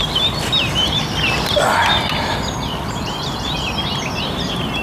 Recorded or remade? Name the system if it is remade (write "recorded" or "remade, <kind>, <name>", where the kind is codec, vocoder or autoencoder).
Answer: recorded